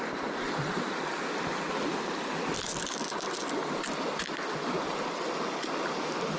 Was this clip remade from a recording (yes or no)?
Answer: no